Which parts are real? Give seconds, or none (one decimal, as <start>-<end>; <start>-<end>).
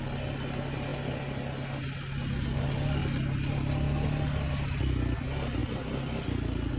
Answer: 0.0-6.8